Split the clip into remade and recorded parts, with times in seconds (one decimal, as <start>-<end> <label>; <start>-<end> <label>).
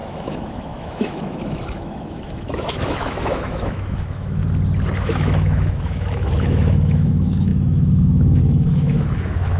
0.0-4.4 remade; 4.4-5.0 recorded; 5.0-9.6 remade